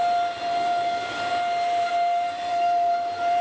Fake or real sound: fake